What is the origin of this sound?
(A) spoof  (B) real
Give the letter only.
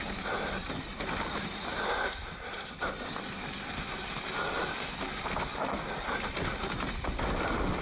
B